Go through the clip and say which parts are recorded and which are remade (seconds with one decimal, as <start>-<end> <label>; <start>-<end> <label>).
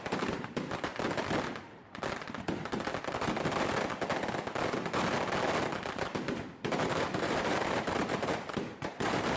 0.0-0.9 remade; 0.9-5.9 recorded; 5.9-9.4 remade